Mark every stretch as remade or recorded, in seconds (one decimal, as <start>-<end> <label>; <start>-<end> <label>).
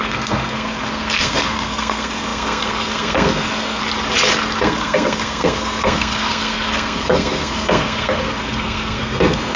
0.0-3.8 remade; 3.8-4.6 recorded; 4.6-9.6 remade